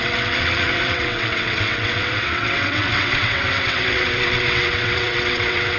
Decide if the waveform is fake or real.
fake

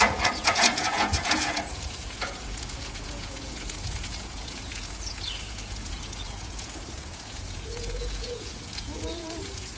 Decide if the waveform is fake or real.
fake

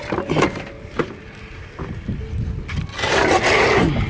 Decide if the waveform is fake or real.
real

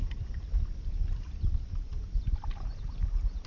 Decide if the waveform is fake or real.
real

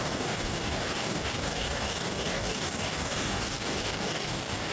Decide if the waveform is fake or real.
fake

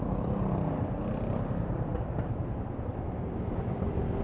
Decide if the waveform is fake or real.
real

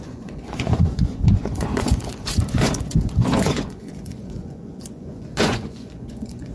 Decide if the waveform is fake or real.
fake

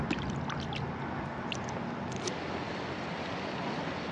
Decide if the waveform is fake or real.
real